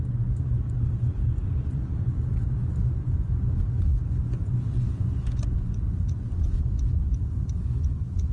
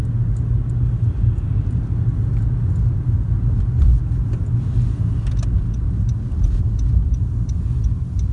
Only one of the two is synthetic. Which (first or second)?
first